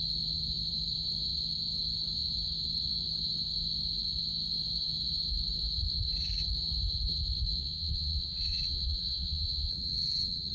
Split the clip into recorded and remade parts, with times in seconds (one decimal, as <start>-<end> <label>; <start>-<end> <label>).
0.0-7.6 recorded; 7.6-10.5 remade